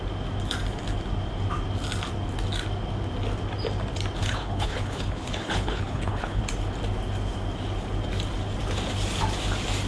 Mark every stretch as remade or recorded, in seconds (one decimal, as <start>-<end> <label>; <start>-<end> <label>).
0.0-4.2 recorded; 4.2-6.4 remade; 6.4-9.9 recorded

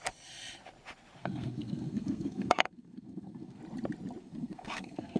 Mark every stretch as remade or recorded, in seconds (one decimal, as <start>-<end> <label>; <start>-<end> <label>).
0.0-1.2 recorded; 1.2-3.6 remade; 3.6-4.2 recorded; 4.2-5.2 remade

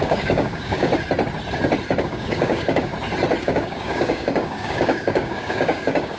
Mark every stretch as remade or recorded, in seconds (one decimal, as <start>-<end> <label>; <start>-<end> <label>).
0.0-0.9 remade; 0.9-2.0 recorded; 2.0-2.9 remade; 2.9-3.4 recorded; 3.4-6.2 remade

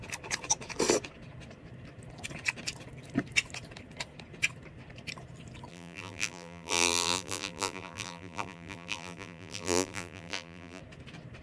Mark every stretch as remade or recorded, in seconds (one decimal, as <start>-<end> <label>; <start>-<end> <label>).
0.0-5.7 recorded; 5.7-10.8 remade; 10.8-11.4 recorded

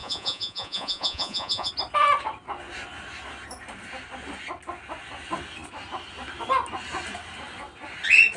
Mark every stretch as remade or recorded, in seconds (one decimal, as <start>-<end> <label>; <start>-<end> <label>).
0.0-1.7 remade; 1.7-8.4 recorded

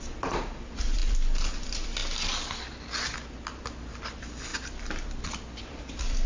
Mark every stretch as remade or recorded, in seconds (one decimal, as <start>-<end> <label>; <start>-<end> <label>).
0.0-2.0 remade; 2.0-3.5 recorded; 3.5-6.3 remade